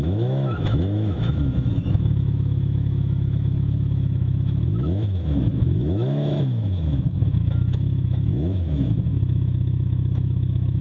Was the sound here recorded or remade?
remade